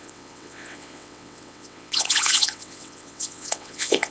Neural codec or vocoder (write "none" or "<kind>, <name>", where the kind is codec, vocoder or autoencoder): vocoder, WaveNeXt